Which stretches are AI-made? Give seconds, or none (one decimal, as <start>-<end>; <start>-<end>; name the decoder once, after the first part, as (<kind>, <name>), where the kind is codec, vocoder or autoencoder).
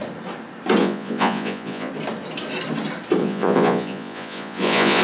0.8-1.9 (vocoder, Vocos); 3.2-5.0